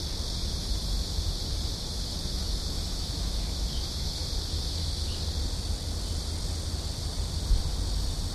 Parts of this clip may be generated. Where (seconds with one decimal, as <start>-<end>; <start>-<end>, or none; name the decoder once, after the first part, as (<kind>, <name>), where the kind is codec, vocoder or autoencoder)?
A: 0.4-5.2 (autoencoder, DAC-VAE)